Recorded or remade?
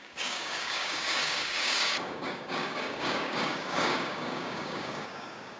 remade